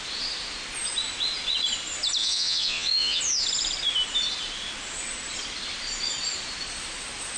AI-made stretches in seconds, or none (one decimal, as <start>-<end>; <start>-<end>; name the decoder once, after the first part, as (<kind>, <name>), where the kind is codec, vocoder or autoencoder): 2.2-3.2 (vocoder, Vocos)